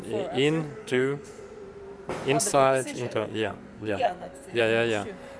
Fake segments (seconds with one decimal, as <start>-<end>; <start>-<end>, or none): 0.8-1.4; 2.5-4.6